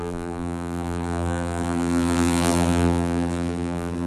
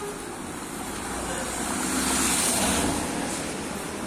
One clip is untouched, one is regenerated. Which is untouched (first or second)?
second